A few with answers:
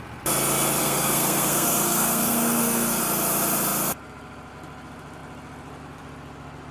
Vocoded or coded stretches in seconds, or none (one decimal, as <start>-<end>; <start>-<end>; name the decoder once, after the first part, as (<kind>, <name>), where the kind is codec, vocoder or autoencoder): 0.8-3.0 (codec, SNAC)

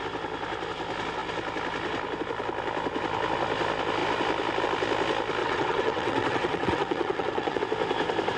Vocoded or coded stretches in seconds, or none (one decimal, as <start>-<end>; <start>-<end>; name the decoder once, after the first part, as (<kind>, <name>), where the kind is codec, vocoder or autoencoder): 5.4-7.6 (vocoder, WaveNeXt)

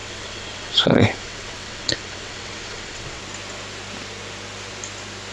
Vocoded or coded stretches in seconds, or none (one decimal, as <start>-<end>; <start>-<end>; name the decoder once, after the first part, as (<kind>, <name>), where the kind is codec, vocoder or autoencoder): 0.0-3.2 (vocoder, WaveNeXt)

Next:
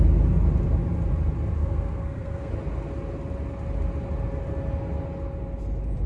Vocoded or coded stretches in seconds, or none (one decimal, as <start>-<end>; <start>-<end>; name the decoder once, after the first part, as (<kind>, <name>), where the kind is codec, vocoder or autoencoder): 1.6-2.5 (codec, SNAC)